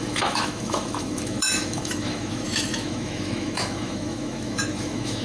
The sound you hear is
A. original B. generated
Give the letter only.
B